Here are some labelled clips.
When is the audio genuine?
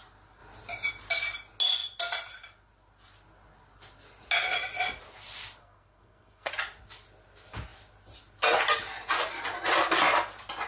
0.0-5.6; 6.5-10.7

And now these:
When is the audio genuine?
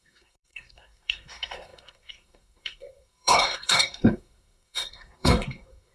none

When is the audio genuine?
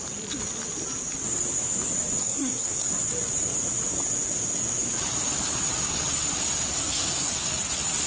0.0-2.2; 2.9-6.7; 7.3-8.1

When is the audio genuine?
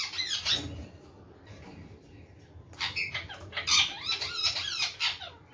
0.0-5.5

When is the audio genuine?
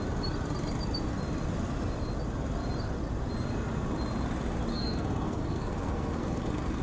0.0-4.7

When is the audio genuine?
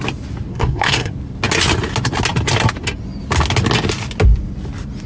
0.0-0.5; 1.1-5.1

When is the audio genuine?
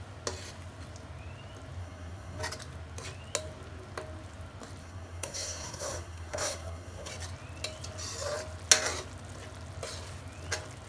0.0-1.8; 2.4-4.8; 7.1-10.9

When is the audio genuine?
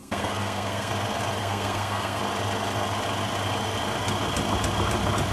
0.9-1.4; 2.2-5.3